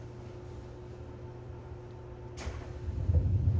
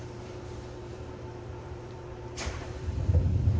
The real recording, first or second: first